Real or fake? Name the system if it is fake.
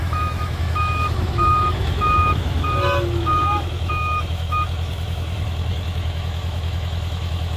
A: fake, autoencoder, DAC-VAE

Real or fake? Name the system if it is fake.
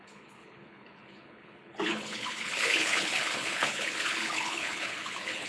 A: fake, codec, HILCodec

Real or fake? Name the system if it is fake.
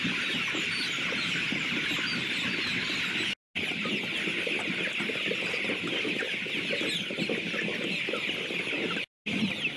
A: real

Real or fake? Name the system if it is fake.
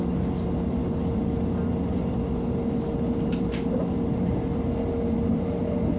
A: real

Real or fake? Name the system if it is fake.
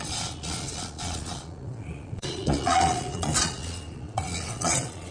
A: fake, vocoder, Vocos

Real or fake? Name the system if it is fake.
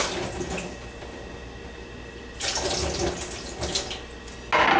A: real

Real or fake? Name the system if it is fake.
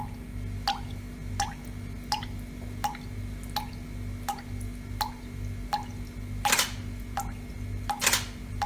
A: real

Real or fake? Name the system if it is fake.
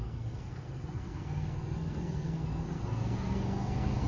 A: fake, codec, SNAC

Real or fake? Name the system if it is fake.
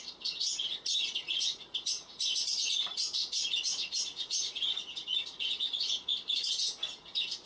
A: fake, vocoder, Vocos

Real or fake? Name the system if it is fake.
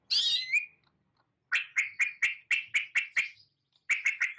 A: real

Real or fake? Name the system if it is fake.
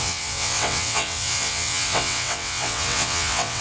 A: fake, vocoder, WaveNeXt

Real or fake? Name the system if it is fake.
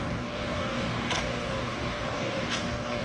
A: fake, codec, DAC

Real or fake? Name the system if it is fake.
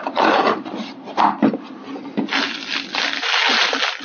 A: real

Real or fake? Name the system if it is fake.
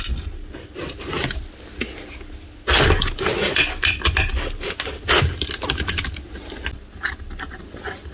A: real